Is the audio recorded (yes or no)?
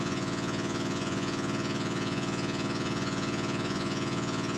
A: no